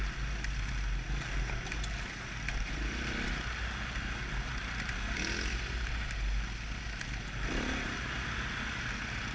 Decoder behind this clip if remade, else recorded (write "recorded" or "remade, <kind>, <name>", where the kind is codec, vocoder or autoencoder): recorded